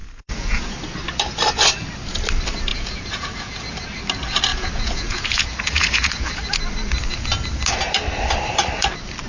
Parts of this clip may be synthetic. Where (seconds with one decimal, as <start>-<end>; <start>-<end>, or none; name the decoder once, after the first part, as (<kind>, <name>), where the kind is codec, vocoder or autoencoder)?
0.0-0.7 (vocoder, Vocos); 2.7-3.6; 4.5-6.4